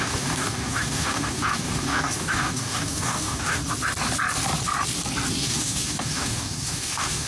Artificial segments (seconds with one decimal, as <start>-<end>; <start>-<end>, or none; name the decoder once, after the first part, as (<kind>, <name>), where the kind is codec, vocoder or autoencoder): 0.0-3.6 (codec, DAC); 5.3-7.3